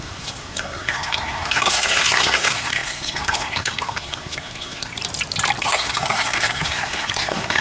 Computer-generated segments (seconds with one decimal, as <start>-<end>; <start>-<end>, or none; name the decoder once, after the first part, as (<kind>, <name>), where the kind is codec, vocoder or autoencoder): 0.0-4.9 (codec, SNAC); 5.6-7.6